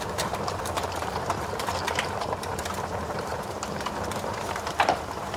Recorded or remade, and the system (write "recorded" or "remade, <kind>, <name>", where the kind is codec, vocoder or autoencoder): remade, vocoder, BigVGAN v2